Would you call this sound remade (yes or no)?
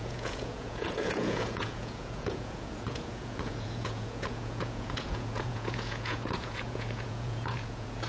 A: yes